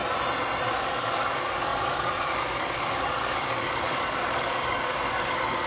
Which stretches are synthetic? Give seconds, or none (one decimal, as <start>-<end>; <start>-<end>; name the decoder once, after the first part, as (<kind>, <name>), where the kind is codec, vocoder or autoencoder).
0.7-5.7 (codec, DAC)